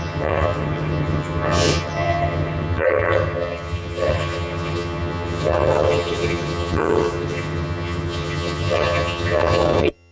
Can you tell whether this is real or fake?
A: fake